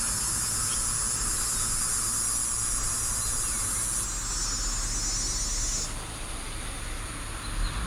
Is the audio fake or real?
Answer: real